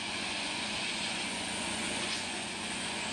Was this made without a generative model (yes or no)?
no